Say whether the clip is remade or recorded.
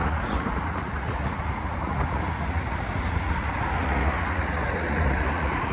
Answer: remade